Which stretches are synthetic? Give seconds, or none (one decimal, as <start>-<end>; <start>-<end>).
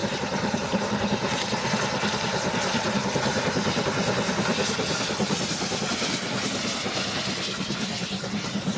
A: 0.0-0.8